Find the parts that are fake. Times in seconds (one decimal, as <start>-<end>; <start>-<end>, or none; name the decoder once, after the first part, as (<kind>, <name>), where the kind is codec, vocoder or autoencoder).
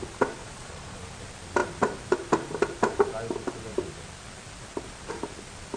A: 0.4-1.0 (vocoder, Vocos)